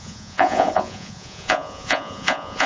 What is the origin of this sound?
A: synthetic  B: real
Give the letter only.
A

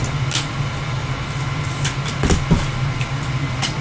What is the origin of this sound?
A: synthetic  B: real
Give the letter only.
B